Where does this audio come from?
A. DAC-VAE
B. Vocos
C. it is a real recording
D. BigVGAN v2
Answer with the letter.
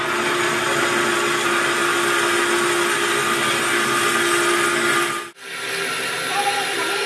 C